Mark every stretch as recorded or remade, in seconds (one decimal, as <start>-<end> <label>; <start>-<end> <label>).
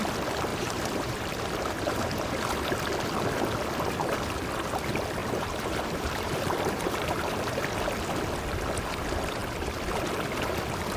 0.0-0.5 recorded; 0.5-2.4 remade; 2.4-5.2 recorded; 5.2-7.6 remade; 7.6-11.0 recorded